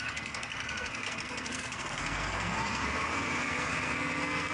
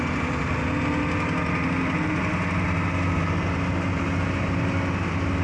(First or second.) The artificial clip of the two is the first